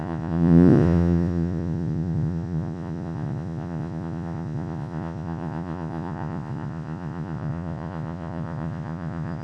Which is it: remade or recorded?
remade